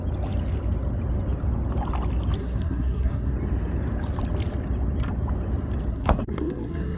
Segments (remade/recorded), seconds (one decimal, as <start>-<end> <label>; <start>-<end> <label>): 0.0-2.4 recorded; 2.4-3.3 remade; 3.3-5.9 recorded; 5.9-7.0 remade